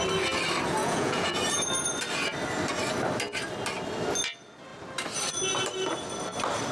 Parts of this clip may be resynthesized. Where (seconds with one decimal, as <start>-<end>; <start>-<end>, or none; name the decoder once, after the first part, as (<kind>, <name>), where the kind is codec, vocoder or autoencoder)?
0.8-1.4 (vocoder, Vocos)